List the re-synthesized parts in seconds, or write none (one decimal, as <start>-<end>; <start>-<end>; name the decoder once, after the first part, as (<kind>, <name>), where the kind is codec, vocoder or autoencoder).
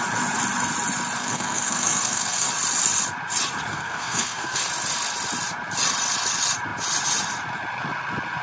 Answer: 1.2-2.5 (codec, SNAC); 3.7-4.6